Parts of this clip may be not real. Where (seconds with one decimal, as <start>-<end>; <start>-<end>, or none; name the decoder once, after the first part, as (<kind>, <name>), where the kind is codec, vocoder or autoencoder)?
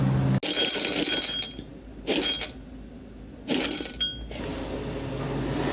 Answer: none